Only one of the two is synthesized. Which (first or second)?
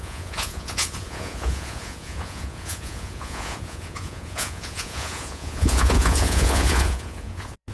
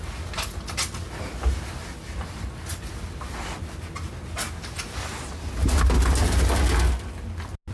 first